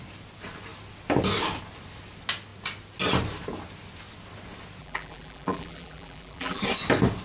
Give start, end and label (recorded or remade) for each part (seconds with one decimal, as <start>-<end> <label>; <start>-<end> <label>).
0.0-4.8 recorded; 4.8-6.6 remade; 6.6-7.2 recorded